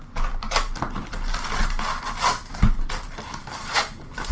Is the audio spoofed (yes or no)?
no